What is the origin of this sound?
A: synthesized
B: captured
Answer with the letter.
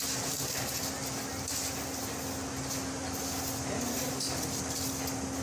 B